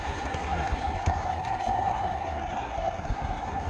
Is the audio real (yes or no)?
no